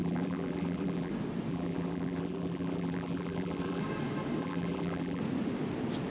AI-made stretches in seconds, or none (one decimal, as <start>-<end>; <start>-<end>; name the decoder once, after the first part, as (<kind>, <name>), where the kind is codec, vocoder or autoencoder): 0.0-1.1 (vocoder, BigVGAN v2); 1.5-3.8; 4.4-5.2